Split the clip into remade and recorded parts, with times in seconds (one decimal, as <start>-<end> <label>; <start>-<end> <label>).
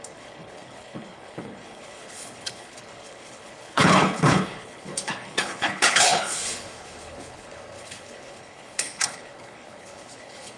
0.0-10.6 remade